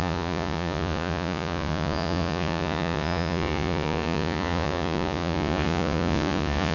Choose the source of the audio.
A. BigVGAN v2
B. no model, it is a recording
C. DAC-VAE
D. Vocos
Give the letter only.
D